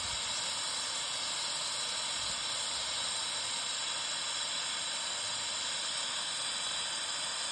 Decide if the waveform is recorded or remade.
recorded